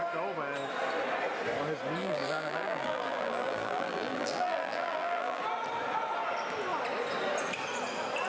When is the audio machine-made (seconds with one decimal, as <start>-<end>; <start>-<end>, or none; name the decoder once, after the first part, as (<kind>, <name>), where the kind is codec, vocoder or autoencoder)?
2.0-5.4 (vocoder, BigVGAN v2)